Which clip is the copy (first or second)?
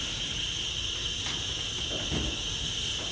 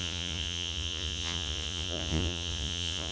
second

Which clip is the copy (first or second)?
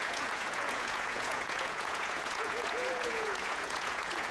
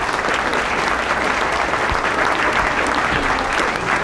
first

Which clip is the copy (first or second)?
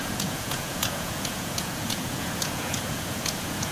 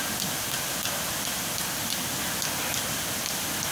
first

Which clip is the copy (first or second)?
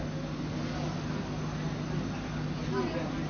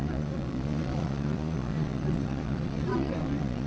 second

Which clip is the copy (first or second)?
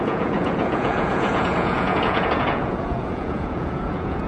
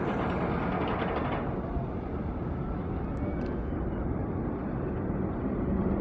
first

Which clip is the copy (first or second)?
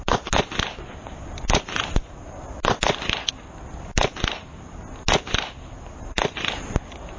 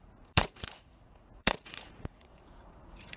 second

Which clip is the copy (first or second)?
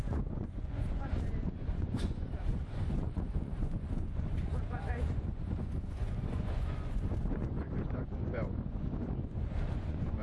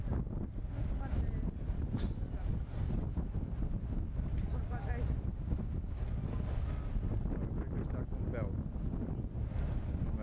first